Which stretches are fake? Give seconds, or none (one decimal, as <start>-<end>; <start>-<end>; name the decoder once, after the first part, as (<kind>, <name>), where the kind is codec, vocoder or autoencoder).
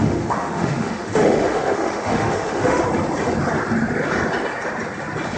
0.0-2.8 (autoencoder, DAC-VAE)